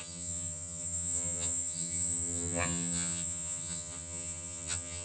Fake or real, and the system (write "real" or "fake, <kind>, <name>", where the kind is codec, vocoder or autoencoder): fake, vocoder, HiFi-GAN